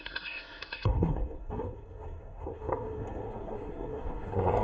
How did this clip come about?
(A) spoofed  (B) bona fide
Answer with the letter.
A